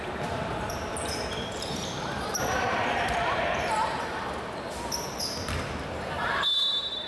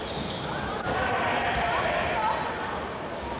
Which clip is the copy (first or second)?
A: first